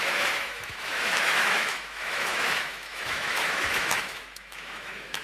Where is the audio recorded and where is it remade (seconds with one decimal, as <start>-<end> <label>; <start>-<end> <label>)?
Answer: 0.0-5.2 remade